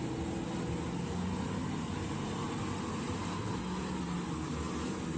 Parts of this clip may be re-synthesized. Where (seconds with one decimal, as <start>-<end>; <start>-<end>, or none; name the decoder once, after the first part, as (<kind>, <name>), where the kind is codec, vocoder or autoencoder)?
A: none